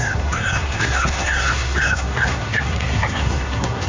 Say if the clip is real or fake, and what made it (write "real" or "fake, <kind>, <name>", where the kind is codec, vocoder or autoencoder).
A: fake, codec, SNAC